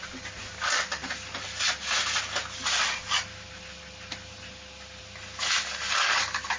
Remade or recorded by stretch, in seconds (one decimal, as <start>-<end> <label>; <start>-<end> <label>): 0.0-6.6 recorded